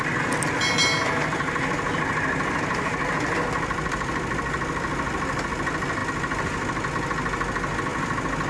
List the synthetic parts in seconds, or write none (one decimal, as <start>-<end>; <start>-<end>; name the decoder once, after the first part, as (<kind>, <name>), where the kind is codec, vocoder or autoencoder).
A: none